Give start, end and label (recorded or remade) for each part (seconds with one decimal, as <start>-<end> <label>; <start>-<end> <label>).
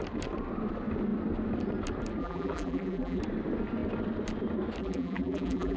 0.0-2.2 recorded; 2.2-3.2 remade; 3.2-4.8 recorded; 4.8-5.8 remade